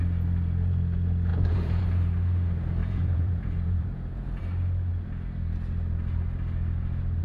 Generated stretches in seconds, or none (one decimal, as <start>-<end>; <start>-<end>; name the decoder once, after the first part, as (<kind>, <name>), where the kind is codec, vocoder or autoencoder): 1.3-1.8 (vocoder, Vocos); 2.8-4.4